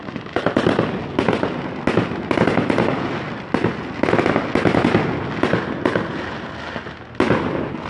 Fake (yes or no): no